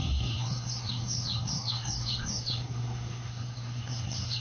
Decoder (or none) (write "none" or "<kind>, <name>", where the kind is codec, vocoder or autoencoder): codec, SNAC